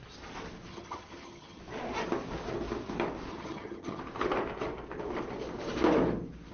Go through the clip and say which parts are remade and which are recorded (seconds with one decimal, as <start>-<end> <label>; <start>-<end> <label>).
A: 0.0-0.7 recorded; 0.7-1.6 remade; 1.6-3.3 recorded; 3.3-4.0 remade; 4.0-6.5 recorded